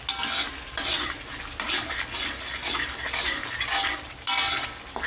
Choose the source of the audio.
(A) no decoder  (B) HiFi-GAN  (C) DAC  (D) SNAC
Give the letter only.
A